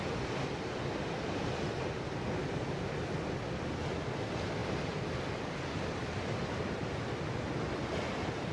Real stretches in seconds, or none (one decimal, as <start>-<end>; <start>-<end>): 0.0-8.5